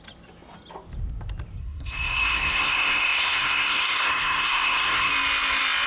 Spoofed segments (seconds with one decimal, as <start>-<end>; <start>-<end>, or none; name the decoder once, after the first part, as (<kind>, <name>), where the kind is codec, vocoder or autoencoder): 1.6-5.1 (codec, SNAC)